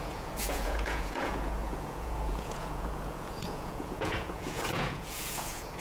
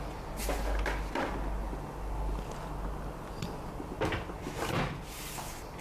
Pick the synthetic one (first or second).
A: first